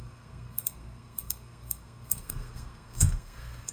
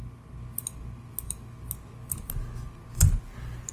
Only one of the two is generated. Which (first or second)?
first